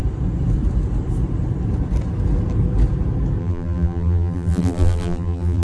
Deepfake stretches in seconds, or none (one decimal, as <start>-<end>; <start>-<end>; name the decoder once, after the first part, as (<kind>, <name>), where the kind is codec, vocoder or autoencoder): 3.4-5.6 (vocoder, BigVGAN v2)